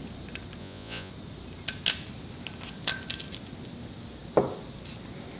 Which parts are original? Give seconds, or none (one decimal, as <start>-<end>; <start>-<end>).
0.0-0.6; 1.1-5.4